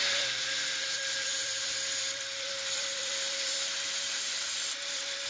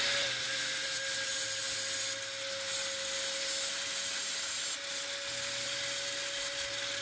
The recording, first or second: second